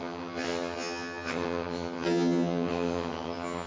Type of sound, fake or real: fake